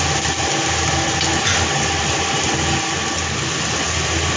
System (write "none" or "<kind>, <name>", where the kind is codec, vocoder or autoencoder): none